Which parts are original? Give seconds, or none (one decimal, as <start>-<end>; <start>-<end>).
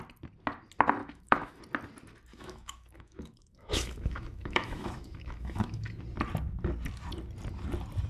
0.0-1.0; 1.6-2.3; 6.0-8.1